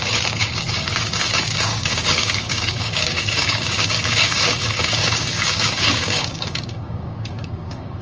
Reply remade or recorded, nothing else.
remade